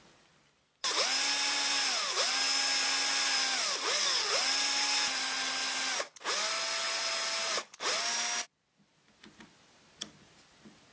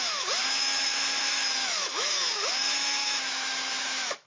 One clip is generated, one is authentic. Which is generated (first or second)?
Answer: second